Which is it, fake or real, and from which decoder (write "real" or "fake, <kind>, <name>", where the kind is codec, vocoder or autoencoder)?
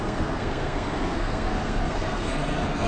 fake, codec, SNAC